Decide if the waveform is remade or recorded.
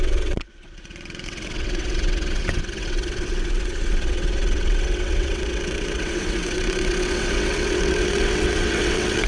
remade